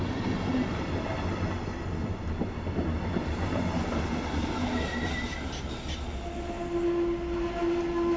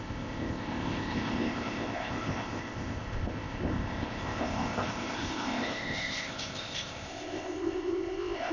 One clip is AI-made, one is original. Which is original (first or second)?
first